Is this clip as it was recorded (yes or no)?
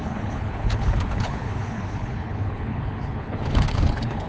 no